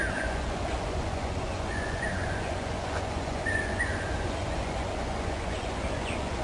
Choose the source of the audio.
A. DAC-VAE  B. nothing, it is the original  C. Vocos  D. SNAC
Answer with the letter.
C